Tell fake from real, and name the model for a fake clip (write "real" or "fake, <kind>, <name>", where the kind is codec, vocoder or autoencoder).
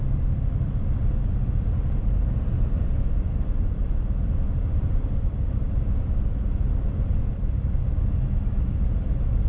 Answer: fake, vocoder, BigVGAN v2